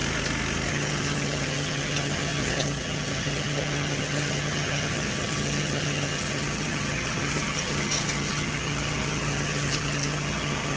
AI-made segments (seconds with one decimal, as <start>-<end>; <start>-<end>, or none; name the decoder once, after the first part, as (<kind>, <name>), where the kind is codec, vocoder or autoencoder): 0.7-10.8 (vocoder, HiFi-GAN)